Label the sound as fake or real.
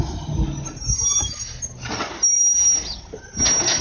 real